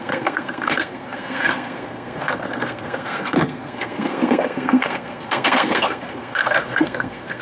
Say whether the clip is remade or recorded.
remade